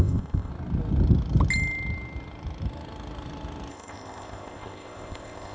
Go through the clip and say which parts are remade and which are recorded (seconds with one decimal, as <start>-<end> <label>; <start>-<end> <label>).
0.0-0.5 remade; 0.5-3.7 recorded; 3.7-5.5 remade